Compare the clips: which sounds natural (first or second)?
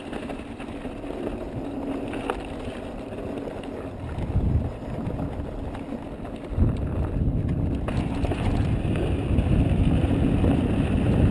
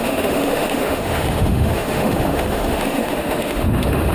first